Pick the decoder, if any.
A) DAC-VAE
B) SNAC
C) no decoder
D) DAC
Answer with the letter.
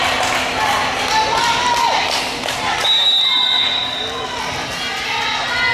C